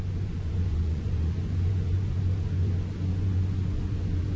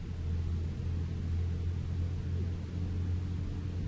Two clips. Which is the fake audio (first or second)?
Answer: first